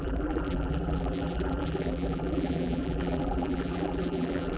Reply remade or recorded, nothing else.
remade